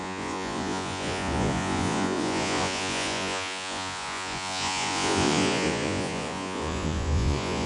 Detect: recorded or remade remade